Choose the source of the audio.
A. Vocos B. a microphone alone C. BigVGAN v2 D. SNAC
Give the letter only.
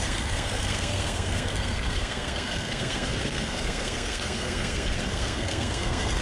D